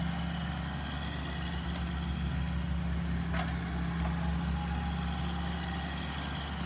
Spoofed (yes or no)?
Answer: no